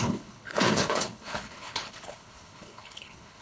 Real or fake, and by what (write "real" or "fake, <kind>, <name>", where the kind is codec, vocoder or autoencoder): fake, codec, HILCodec